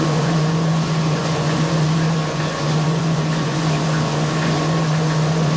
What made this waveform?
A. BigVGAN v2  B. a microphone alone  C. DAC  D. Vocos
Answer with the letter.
D